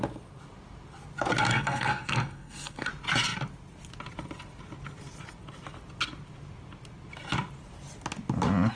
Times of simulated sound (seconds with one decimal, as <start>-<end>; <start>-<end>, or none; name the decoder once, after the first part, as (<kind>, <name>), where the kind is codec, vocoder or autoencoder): 1.4-2.9 (codec, SNAC)